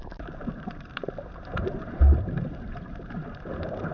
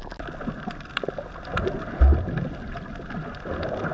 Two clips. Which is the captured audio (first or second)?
second